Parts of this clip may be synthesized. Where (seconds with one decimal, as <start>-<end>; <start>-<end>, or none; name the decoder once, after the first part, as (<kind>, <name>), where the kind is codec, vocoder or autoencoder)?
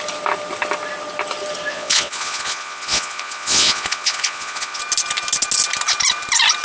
1.7-4.8 (vocoder, Vocos)